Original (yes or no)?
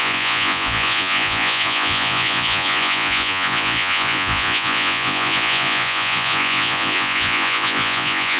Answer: no